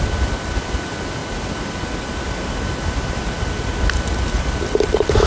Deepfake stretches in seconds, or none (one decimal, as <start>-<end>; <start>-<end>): none